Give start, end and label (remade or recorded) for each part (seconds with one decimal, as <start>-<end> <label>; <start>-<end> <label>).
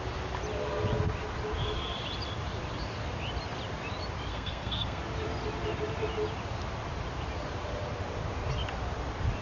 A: 0.0-4.3 recorded; 4.3-5.0 remade; 5.0-9.4 recorded